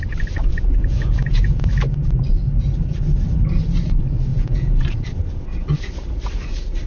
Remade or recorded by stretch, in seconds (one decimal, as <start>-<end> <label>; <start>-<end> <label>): 0.0-0.5 recorded; 0.5-1.7 remade; 1.7-4.3 recorded; 4.3-4.8 remade; 4.8-6.9 recorded